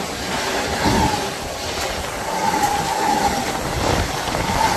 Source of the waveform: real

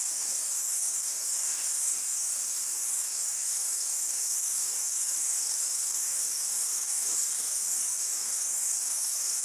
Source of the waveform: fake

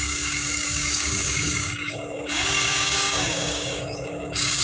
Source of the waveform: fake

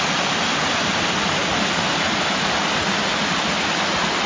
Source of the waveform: real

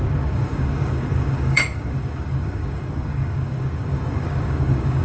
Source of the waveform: fake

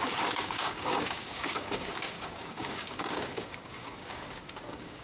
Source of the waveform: fake